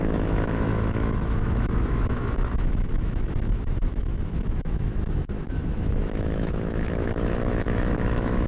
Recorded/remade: remade